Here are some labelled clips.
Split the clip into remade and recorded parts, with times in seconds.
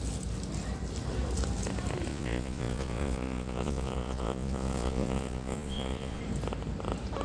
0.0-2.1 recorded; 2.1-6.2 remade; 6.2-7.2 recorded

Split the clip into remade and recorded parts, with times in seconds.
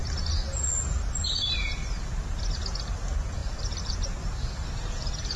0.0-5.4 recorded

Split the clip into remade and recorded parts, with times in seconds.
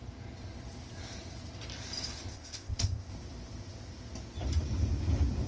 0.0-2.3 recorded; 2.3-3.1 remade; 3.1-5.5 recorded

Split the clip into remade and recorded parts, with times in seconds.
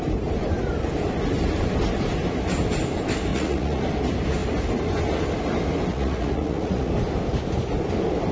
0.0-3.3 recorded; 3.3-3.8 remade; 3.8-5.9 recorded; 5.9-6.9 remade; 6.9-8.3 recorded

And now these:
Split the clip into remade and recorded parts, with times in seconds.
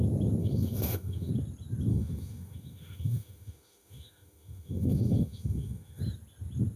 0.0-0.4 recorded; 0.4-1.3 remade; 1.3-1.9 recorded; 1.9-6.0 remade; 6.0-6.8 recorded